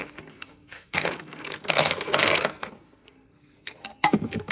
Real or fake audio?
fake